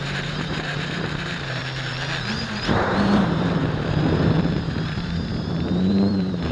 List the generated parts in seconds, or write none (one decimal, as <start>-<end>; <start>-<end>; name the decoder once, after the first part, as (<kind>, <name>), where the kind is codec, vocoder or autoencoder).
0.0-1.6 (vocoder, BigVGAN v2); 2.3-6.5